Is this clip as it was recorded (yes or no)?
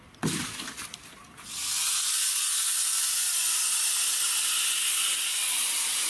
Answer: yes